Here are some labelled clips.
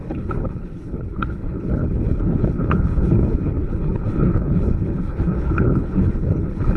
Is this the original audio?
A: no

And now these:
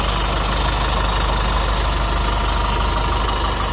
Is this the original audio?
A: yes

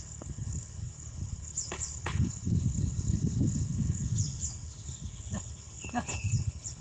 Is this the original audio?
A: no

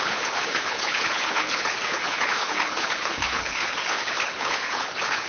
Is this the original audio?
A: no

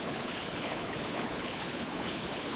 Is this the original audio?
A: no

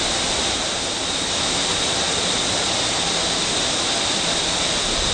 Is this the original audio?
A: yes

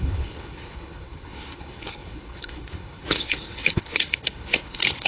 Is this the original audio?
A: no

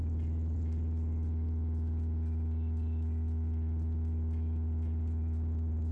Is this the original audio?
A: yes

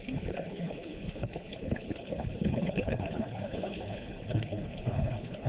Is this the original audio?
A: no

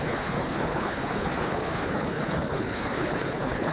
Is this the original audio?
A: no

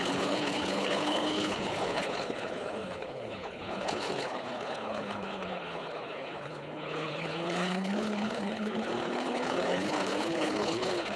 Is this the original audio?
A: no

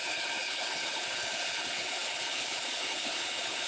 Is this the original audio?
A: no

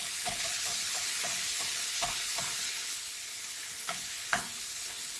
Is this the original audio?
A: no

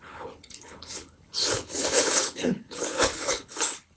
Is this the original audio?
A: no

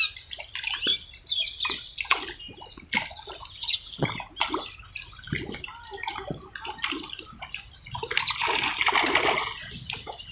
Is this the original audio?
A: yes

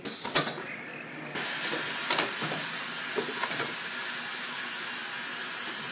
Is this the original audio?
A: yes